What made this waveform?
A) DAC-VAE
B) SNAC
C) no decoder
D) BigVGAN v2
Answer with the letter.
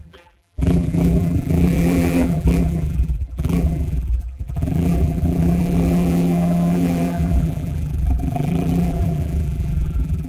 D